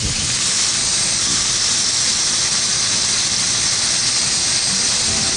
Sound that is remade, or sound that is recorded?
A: recorded